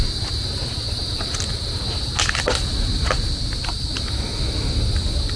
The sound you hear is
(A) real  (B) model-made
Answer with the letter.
A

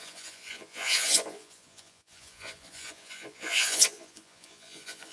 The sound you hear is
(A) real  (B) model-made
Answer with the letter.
B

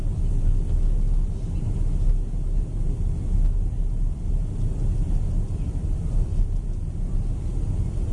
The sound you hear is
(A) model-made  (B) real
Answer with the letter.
B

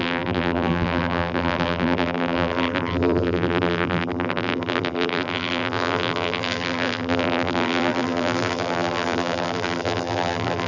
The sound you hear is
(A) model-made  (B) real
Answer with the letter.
A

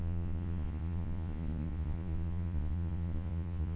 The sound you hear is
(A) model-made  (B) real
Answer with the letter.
A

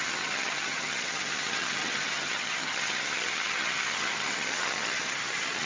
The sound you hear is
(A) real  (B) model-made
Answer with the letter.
B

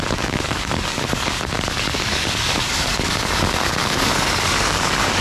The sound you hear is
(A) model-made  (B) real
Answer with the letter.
A